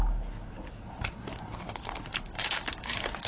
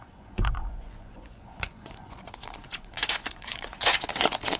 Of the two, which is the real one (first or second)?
first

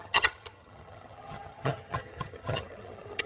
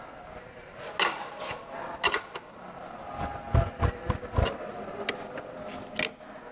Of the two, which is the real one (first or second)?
second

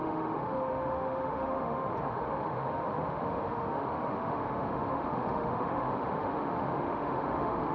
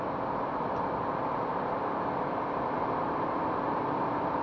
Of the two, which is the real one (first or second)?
second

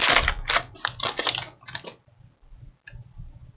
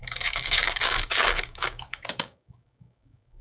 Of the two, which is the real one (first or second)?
first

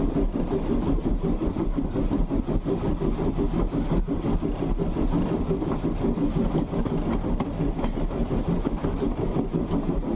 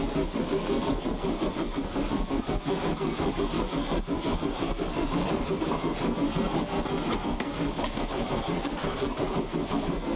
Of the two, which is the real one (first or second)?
first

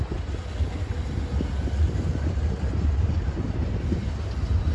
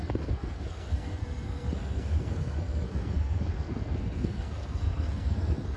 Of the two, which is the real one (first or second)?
first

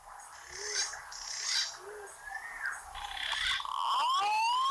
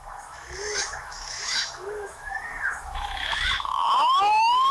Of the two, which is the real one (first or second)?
first